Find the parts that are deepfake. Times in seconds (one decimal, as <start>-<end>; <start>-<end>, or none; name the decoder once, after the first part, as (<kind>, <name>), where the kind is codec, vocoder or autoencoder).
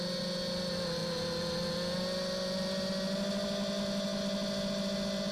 none